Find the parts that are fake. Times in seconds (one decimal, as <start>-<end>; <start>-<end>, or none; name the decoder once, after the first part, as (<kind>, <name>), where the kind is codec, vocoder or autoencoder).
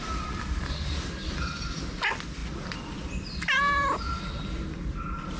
0.0-5.4 (vocoder, BigVGAN v2)